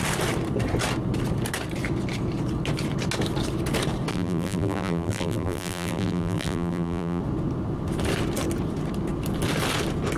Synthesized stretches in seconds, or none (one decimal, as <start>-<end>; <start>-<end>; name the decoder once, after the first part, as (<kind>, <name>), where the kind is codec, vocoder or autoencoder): 4.1-7.2 (vocoder, BigVGAN v2)